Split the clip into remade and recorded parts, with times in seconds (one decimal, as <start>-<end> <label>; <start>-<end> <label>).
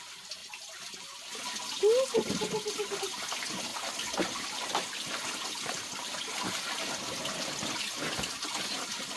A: 0.0-3.7 recorded; 3.7-7.0 remade; 7.0-9.2 recorded